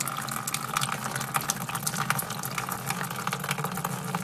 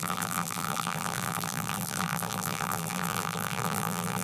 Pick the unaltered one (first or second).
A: first